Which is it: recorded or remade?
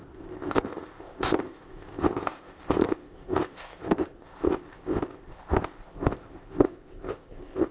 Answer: remade